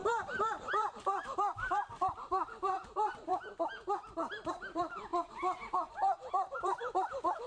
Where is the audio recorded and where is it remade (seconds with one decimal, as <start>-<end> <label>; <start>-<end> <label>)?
0.0-3.3 remade; 3.3-4.5 recorded; 4.5-5.1 remade; 5.1-5.9 recorded; 5.9-7.5 remade